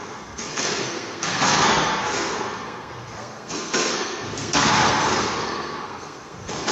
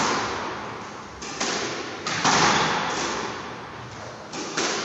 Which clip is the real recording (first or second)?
second